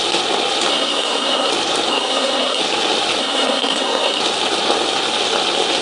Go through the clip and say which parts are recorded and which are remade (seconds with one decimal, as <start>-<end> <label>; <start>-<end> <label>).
0.0-0.7 recorded; 0.7-1.5 remade; 1.5-1.9 recorded; 1.9-2.6 remade; 2.6-3.2 recorded; 3.2-4.2 remade; 4.2-5.8 recorded

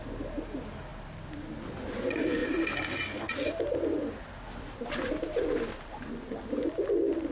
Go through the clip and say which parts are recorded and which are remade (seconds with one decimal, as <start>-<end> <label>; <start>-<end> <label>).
0.0-7.3 recorded

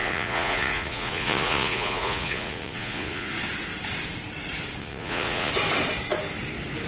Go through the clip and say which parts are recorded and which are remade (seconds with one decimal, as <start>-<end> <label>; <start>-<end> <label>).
0.0-3.3 remade; 3.3-4.8 recorded; 4.8-5.5 remade; 5.5-6.9 recorded

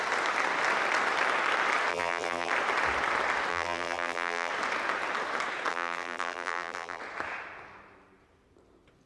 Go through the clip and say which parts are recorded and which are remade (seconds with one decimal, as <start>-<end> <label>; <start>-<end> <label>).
0.0-1.9 recorded; 1.9-2.5 remade; 2.5-3.5 recorded; 3.5-4.5 remade; 4.5-5.7 recorded; 5.7-7.0 remade; 7.0-9.1 recorded

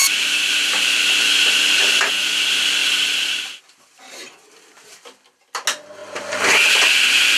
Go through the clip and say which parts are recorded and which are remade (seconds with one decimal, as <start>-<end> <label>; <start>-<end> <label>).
0.0-1.3 remade; 1.3-6.0 recorded; 6.0-6.8 remade; 6.8-7.4 recorded